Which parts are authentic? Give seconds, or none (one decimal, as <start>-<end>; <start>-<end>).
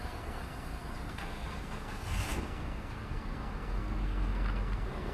none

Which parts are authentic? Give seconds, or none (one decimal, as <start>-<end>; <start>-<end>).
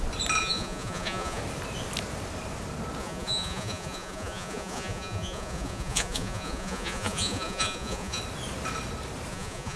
0.0-0.4; 1.4-3.0; 8.2-9.3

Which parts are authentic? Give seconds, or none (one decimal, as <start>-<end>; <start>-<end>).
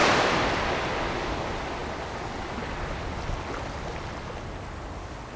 0.0-5.4